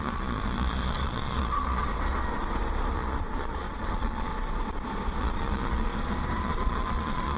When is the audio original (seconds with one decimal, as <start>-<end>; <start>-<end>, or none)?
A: 1.8-2.9; 4.3-5.2; 5.9-6.4